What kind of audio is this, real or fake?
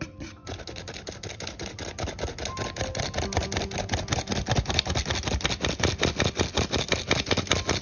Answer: real